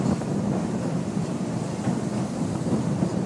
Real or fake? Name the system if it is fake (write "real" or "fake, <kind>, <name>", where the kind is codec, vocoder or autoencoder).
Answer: real